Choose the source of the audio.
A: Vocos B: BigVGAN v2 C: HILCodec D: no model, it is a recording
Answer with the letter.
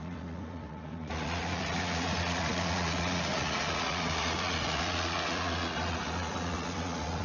A